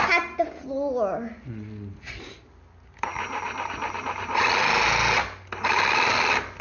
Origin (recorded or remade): recorded